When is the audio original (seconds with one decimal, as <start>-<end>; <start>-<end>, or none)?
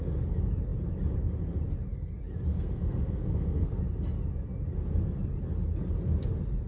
0.0-2.5; 3.8-6.7